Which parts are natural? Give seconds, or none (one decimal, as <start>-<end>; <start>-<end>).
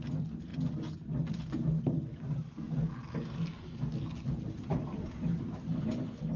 0.0-6.4